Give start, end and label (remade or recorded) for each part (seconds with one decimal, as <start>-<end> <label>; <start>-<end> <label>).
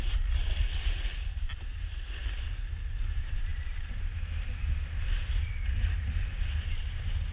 0.0-7.3 recorded